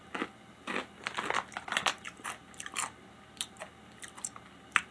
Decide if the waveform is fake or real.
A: real